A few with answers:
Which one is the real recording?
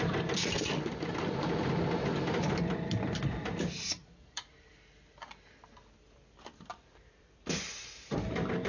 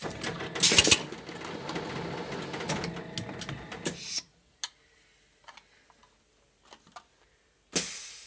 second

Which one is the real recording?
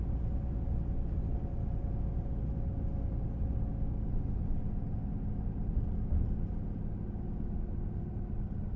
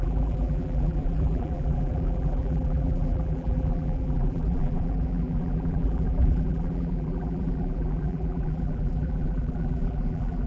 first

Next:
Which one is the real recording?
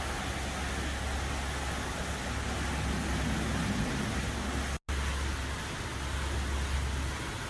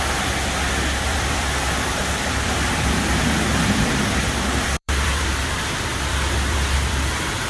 first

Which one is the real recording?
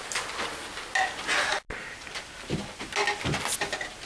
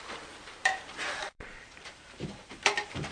first